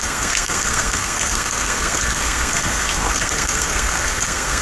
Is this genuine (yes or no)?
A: no